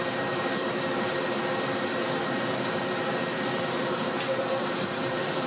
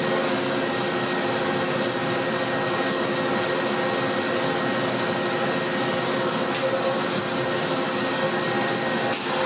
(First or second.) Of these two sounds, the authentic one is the second